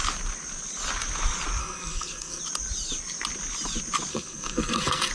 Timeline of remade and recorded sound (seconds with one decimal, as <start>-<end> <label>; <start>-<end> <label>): 0.0-1.6 recorded; 1.6-2.4 remade; 2.4-4.1 recorded; 4.1-5.1 remade